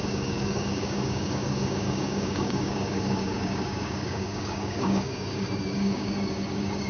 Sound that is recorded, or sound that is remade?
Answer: remade